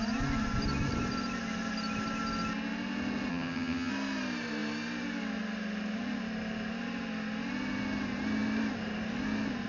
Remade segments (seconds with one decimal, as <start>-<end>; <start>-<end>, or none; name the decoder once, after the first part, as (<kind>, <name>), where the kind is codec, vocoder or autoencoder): 3.3-3.9 (vocoder, HiFi-GAN)